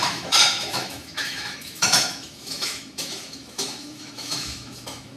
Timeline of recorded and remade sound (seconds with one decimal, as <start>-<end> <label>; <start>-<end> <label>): 0.0-5.2 remade